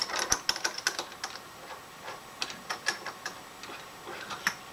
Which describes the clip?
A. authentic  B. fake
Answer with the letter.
A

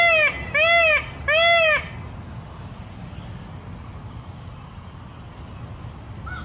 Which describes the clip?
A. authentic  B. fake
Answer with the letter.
A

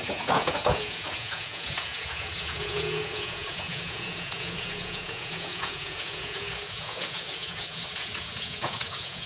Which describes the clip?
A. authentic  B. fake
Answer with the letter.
B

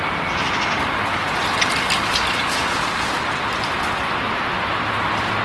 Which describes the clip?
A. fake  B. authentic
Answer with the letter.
B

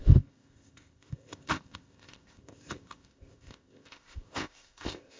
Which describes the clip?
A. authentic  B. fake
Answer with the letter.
B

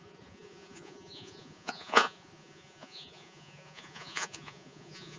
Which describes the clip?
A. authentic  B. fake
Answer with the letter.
B